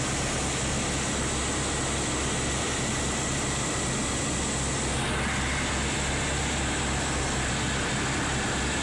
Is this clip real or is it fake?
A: real